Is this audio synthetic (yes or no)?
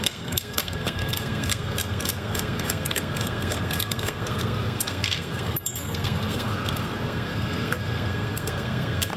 yes